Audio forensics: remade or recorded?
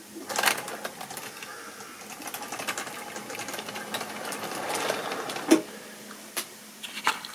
recorded